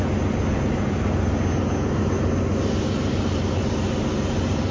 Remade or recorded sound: recorded